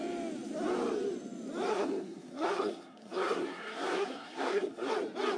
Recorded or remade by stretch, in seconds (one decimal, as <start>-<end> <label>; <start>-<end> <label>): 0.0-1.7 recorded; 1.7-4.9 remade; 4.9-5.4 recorded